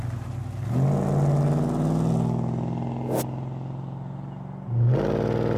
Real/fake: real